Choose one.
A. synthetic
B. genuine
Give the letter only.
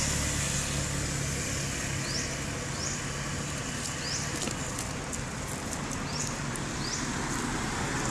B